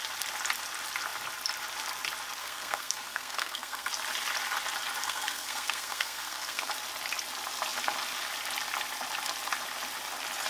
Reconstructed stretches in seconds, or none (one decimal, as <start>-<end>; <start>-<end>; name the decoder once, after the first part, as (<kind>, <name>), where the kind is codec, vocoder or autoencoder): 2.4-3.9 (codec, SNAC); 5.0-6.7